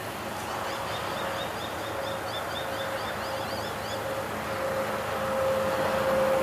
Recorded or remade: recorded